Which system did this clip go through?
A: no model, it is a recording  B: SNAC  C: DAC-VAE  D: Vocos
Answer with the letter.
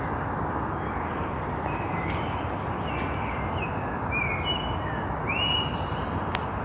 A